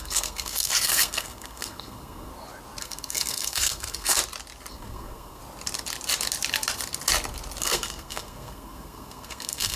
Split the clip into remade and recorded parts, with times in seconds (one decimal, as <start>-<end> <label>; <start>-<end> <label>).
0.0-2.3 remade; 2.3-2.8 recorded; 2.8-4.2 remade; 4.2-4.7 recorded; 4.7-5.4 remade; 5.4-7.6 recorded; 7.6-9.8 remade